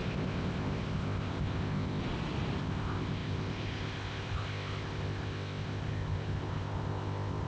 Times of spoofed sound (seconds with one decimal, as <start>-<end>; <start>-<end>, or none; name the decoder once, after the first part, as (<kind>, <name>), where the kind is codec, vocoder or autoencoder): 0.0-2.0 (codec, ZipCodec); 2.6-7.5

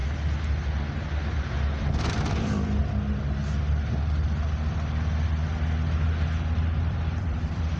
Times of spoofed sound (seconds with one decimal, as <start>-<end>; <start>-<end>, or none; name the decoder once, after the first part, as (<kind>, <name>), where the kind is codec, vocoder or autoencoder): 2.4-2.8 (vocoder, BigVGAN v2); 6.8-7.8

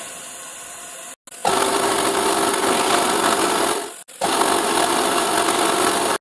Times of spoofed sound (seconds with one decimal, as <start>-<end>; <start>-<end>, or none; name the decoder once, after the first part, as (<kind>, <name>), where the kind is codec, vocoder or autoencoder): none

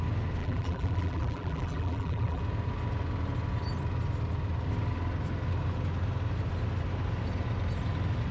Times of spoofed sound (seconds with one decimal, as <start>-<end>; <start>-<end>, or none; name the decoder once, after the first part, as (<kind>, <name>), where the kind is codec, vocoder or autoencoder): 0.4-2.4 (vocoder, BigVGAN v2)

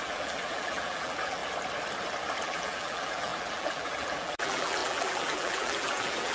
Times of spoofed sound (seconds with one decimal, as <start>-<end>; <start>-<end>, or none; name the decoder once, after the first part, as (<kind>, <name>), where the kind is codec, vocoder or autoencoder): 0.0-1.4 (vocoder, BigVGAN v2); 2.4-6.3

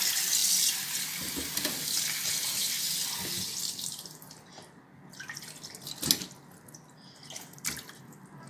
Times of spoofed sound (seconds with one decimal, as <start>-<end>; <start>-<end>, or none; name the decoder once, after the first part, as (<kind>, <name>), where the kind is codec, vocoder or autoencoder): none

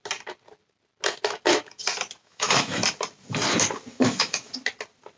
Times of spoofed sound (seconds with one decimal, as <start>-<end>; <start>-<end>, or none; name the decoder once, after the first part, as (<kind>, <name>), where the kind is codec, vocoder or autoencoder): 2.2-2.8 (autoencoder, DAC-VAE); 3.9-4.5

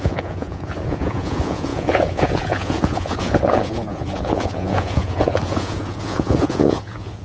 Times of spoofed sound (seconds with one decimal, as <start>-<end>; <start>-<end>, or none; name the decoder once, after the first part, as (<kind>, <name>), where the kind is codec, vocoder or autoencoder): 0.0-7.2 (vocoder, Vocos)